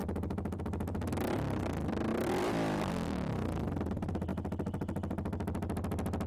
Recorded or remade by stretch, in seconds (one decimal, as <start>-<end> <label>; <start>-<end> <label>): 0.0-4.3 remade; 4.3-6.3 recorded